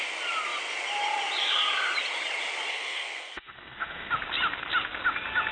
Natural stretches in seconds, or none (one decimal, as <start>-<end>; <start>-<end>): 0.0-2.7; 4.1-5.5

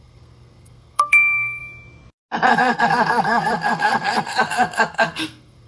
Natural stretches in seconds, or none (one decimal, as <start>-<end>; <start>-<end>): 1.6-2.5